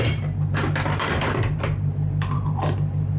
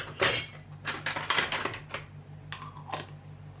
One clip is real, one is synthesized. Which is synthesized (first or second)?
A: first